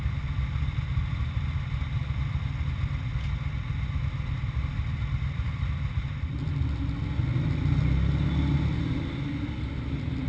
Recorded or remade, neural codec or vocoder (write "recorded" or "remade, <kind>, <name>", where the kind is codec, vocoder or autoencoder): recorded